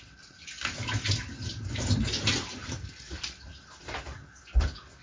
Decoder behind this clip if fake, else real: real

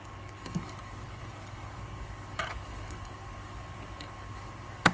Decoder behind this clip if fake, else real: fake, codec, DAC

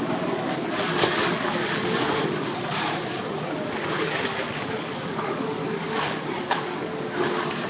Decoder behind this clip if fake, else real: fake, codec, DAC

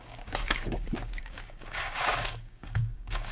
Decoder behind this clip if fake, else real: fake, codec, DAC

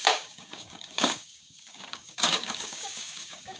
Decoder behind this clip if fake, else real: fake, codec, DAC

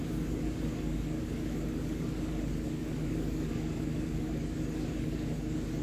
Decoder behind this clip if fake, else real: fake, codec, DAC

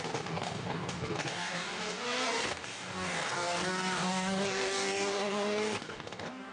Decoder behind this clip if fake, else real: fake, codec, DAC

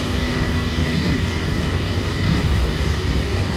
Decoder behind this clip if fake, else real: fake, codec, DAC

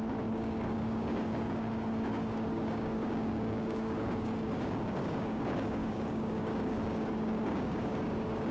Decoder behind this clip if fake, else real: fake, codec, DAC